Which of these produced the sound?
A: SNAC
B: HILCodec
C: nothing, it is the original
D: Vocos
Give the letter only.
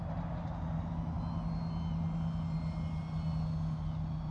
C